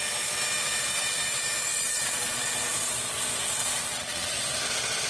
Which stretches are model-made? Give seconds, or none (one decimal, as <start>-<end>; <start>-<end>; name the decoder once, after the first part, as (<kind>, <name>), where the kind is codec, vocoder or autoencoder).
1.7-2.5 (vocoder, Vocos); 3.6-4.3